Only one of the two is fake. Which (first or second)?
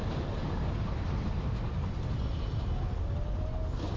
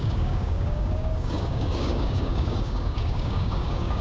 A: second